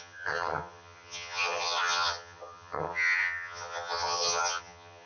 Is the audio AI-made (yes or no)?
yes